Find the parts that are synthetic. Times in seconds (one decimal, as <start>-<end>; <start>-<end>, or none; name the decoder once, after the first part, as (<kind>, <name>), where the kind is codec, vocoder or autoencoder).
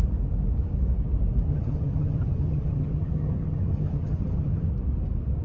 1.5-4.7 (vocoder, HiFi-GAN)